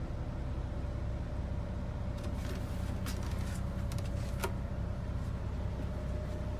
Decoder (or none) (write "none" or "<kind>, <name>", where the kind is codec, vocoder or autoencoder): none